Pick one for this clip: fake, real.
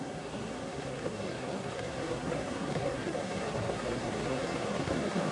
fake